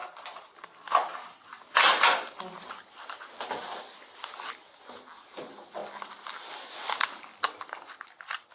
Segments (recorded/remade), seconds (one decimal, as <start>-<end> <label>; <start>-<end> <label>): 0.0-8.5 recorded

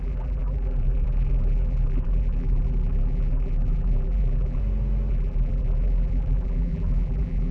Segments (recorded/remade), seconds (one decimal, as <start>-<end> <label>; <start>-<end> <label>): 0.0-4.6 remade; 4.6-5.1 recorded; 5.1-7.5 remade